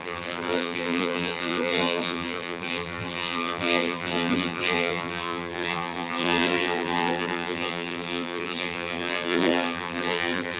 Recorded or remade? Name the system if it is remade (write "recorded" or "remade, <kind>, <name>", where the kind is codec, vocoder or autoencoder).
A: remade, vocoder, BigVGAN v2